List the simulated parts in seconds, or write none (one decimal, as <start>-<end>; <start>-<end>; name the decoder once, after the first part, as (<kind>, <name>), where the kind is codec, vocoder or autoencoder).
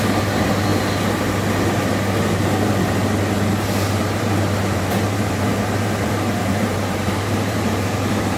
4.0-8.4 (vocoder, BigVGAN v2)